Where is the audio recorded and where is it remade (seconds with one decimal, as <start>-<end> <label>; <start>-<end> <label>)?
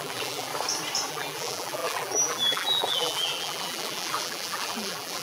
0.0-0.5 remade; 0.5-1.1 recorded; 1.1-5.2 remade